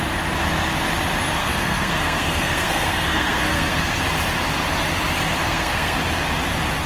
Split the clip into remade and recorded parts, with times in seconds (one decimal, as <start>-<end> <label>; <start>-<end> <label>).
0.0-1.4 recorded; 1.4-4.0 remade; 4.0-5.4 recorded; 5.4-6.0 remade; 6.0-6.9 recorded

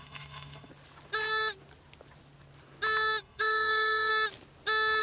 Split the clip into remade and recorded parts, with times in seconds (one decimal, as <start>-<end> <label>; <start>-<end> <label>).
0.0-0.7 remade; 0.7-3.2 recorded; 3.2-4.1 remade; 4.1-5.0 recorded

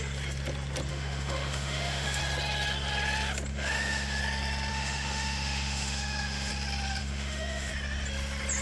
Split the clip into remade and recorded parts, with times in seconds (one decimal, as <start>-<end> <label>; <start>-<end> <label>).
0.0-0.9 recorded; 0.9-2.2 remade; 2.2-3.5 recorded; 3.5-4.2 remade; 4.2-4.7 recorded; 4.7-6.5 remade; 6.5-7.0 recorded; 7.0-7.7 remade; 7.7-8.6 recorded